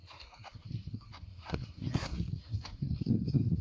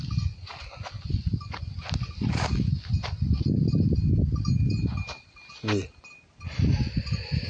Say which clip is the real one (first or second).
second